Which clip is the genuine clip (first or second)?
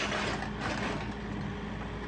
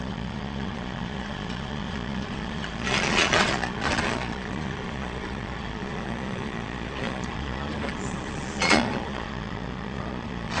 first